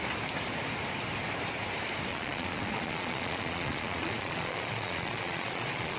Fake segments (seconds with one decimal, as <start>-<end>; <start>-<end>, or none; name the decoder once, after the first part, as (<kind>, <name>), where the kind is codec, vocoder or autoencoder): 2.1-6.0 (vocoder, Vocos)